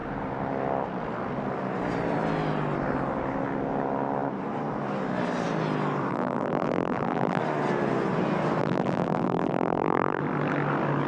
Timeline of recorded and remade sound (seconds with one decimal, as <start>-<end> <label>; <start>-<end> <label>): 0.0-6.1 recorded; 6.1-7.4 remade; 7.4-8.6 recorded; 8.6-10.2 remade; 10.2-11.1 recorded